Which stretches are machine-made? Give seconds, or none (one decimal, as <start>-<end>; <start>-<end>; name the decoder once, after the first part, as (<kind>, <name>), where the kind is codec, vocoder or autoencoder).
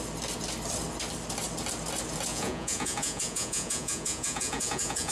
2.3-5.1 (vocoder, Vocos)